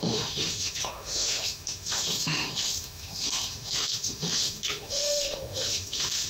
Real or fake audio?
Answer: fake